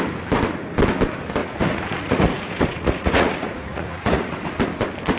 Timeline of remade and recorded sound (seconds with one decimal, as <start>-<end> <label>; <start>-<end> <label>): 0.0-1.4 recorded; 1.4-4.5 remade; 4.5-5.2 recorded